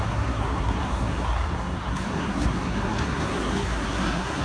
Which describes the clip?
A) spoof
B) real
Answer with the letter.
A